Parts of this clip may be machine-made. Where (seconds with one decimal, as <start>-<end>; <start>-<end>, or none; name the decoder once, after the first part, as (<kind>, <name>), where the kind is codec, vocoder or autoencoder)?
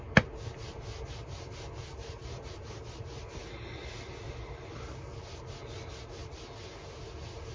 2.2-2.8 (vocoder, BigVGAN v2)